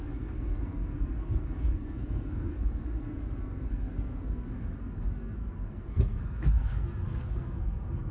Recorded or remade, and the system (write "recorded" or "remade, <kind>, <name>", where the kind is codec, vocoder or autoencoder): remade, codec, SNAC